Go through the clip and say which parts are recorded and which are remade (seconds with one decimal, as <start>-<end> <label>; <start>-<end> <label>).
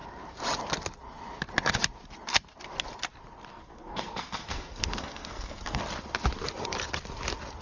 0.0-3.5 recorded; 3.5-5.8 remade; 5.8-7.6 recorded